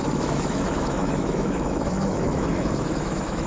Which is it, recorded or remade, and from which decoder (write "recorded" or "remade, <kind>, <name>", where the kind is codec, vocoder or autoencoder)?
remade, autoencoder, DAC-VAE